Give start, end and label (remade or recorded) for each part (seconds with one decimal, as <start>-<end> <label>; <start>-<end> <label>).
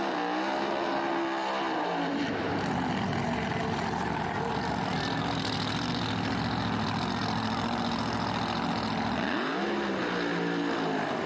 0.0-11.3 recorded